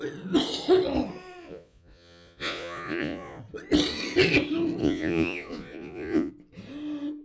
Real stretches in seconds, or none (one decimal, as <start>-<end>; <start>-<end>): 0.0-1.4; 3.4-4.8; 6.3-7.2